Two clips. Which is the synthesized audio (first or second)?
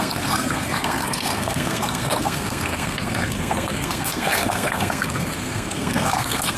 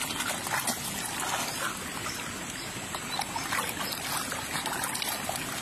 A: first